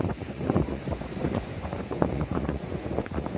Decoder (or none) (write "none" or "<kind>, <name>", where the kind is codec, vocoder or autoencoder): vocoder, Vocos